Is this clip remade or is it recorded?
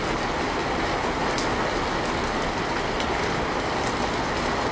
recorded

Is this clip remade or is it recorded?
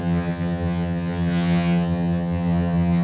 remade